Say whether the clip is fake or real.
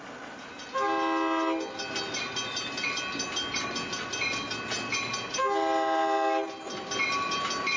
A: real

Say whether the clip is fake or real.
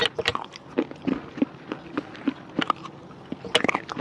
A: real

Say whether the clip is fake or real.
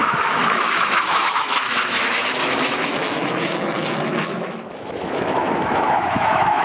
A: fake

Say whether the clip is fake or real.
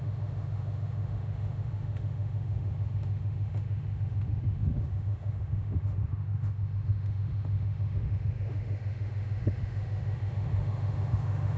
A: fake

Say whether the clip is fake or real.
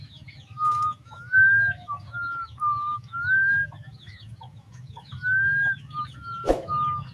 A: fake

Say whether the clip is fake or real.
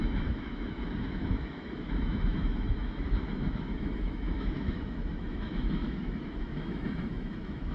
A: fake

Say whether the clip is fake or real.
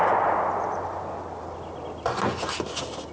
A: real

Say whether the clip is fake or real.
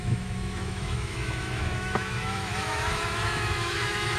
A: fake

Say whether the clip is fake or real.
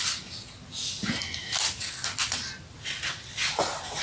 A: real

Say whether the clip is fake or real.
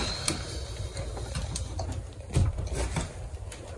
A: real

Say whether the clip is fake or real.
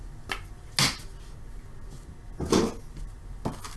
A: real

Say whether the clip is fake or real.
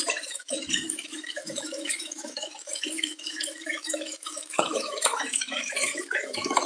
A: fake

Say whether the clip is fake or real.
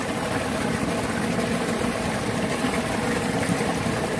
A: real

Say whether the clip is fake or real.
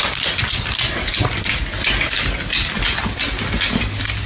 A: real